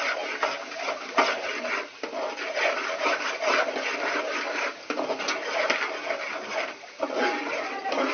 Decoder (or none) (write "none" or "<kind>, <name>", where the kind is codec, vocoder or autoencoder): none